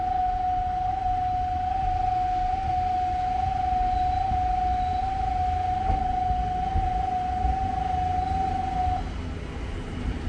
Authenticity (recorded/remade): recorded